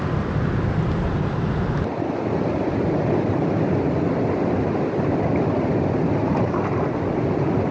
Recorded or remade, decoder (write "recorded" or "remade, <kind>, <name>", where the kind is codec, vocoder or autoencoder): recorded